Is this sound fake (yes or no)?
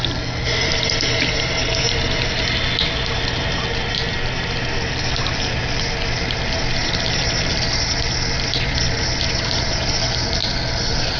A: no